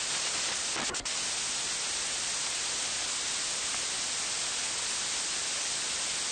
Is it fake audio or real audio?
real